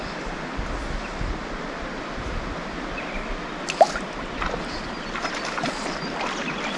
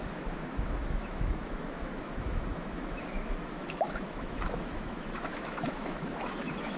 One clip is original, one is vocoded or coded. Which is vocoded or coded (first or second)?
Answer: second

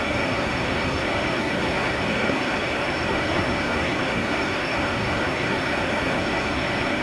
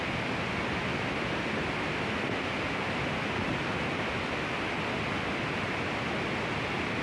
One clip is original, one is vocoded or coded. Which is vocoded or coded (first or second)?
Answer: first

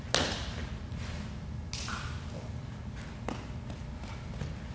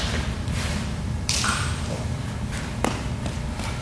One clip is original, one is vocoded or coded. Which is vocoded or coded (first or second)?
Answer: second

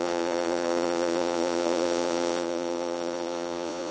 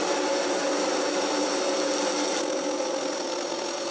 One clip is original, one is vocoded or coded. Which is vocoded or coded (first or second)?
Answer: first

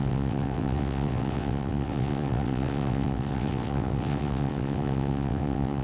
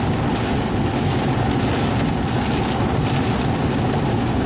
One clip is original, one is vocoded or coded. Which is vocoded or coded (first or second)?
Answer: first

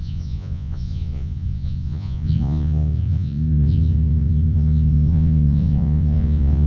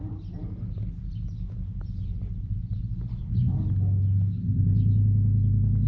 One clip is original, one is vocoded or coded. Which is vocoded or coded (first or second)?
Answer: first